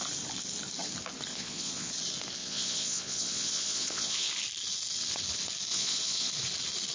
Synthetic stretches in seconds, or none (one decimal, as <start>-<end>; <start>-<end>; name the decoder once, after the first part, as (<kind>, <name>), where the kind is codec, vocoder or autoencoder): 1.3-1.9 (vocoder, Vocos); 2.4-4.3; 5.7-6.3